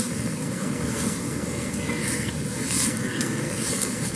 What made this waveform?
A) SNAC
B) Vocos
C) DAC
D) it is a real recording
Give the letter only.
A